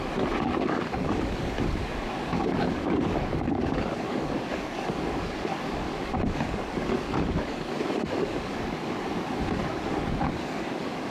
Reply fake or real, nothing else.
fake